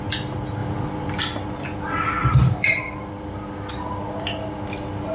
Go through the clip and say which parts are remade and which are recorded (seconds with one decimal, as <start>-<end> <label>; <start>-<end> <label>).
0.0-0.6 recorded; 0.6-1.2 remade; 1.2-2.2 recorded; 2.2-3.7 remade; 3.7-5.1 recorded